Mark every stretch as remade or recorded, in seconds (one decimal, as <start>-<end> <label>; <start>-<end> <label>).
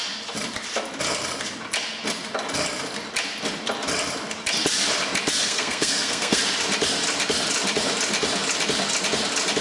0.0-5.4 recorded; 5.4-6.4 remade; 6.4-9.6 recorded